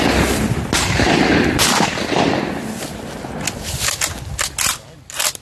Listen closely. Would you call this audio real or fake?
real